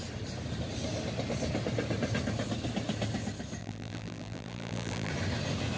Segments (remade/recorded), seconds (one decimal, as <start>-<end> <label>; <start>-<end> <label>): 0.0-3.6 recorded; 3.6-5.1 remade; 5.1-5.8 recorded